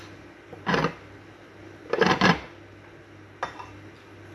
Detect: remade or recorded recorded